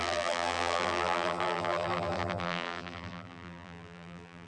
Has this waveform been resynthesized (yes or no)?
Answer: yes